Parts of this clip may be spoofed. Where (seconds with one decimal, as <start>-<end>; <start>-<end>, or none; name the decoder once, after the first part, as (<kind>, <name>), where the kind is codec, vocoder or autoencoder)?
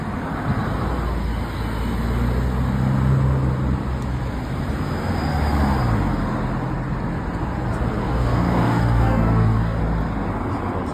8.0-9.8 (codec, DAC)